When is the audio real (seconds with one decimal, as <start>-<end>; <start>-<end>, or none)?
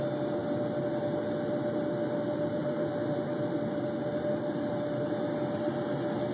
0.0-2.6; 4.0-6.3